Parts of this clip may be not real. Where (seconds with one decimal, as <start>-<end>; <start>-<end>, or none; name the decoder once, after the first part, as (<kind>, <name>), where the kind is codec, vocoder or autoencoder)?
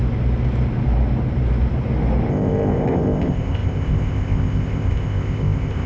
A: 2.3-5.9 (codec, ZipCodec)